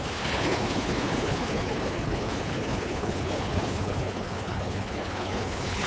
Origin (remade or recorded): remade